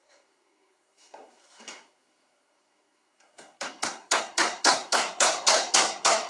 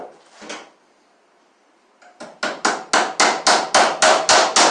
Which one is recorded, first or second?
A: second